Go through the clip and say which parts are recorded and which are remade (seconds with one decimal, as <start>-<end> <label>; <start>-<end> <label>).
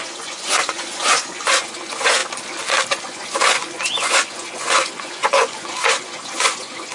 0.0-2.2 remade; 2.2-3.0 recorded; 3.0-6.9 remade